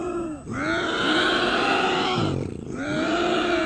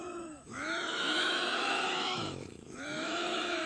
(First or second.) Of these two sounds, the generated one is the second